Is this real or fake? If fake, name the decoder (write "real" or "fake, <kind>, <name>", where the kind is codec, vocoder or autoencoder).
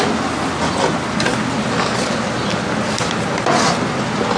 real